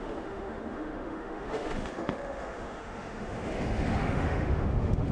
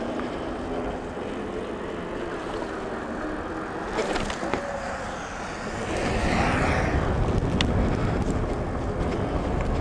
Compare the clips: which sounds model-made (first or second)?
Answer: first